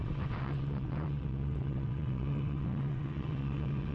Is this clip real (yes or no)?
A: no